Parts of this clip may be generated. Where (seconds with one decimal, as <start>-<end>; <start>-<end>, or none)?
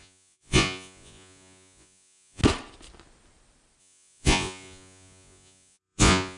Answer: 0.0-2.4; 3.8-6.4